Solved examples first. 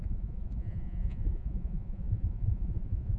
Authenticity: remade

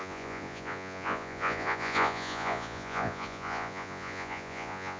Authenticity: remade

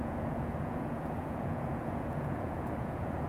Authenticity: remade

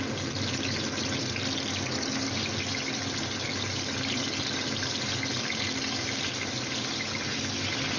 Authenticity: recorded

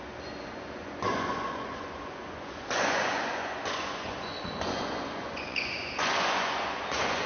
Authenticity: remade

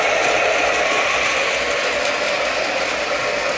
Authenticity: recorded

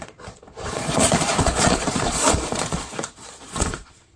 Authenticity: remade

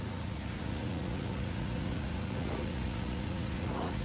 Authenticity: remade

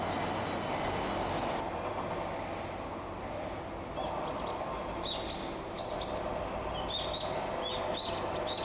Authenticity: recorded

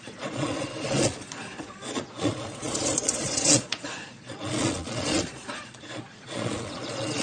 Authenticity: remade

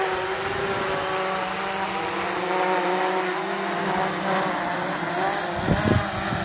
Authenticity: recorded